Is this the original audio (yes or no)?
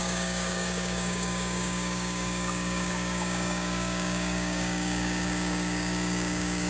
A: no